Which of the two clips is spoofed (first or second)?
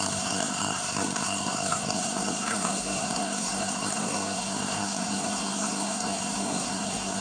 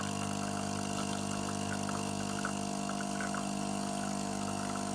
first